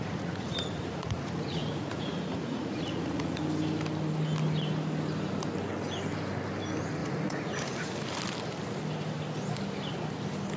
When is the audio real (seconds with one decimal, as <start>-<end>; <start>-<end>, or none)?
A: 3.4-7.0; 7.9-10.6